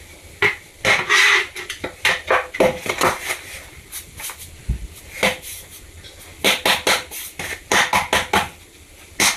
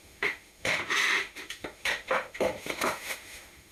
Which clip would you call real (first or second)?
first